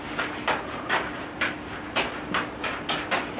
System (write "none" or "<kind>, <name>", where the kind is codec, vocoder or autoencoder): none